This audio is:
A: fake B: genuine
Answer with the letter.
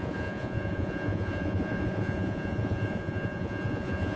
A